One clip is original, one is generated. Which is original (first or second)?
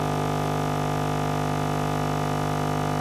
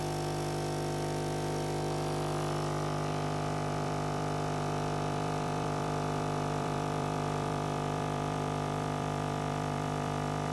first